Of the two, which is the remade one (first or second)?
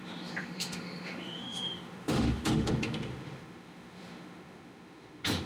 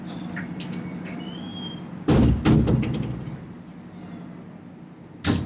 first